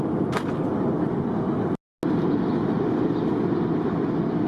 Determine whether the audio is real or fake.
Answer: real